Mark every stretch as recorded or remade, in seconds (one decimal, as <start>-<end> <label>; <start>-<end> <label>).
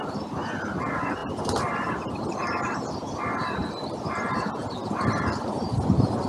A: 0.0-1.2 recorded; 1.2-2.0 remade; 2.0-4.8 recorded; 4.8-5.4 remade; 5.4-6.3 recorded